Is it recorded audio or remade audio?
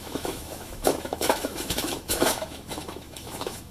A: remade